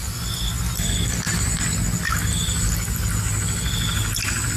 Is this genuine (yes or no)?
yes